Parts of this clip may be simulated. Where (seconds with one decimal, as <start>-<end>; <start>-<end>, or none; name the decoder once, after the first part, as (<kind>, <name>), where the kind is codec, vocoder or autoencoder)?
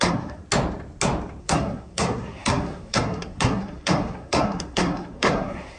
0.0-0.4 (codec, SNAC); 1.4-5.8